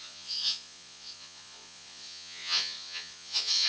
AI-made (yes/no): yes